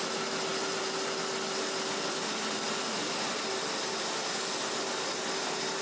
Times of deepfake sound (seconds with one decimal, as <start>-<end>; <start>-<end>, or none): none